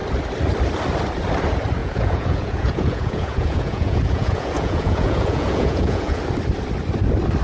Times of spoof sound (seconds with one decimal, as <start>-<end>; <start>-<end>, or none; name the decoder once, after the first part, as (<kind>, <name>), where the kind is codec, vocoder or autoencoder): 1.8-6.2 (vocoder, Vocos)

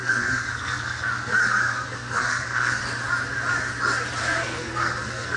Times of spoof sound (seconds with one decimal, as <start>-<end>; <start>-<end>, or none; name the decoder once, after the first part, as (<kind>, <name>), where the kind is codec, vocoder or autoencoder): 0.0-2.8 (codec, SNAC); 4.2-5.4

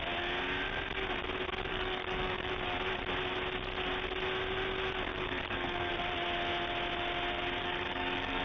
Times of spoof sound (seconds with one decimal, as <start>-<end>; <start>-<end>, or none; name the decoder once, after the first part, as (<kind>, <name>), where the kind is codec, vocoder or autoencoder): 1.7-2.5 (codec, DAC); 5.1-5.9; 7.6-8.4